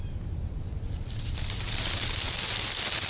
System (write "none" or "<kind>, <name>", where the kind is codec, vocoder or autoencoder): none